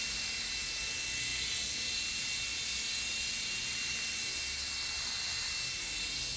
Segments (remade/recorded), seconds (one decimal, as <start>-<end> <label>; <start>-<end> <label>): 0.0-6.4 recorded